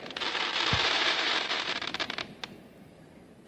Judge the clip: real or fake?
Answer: fake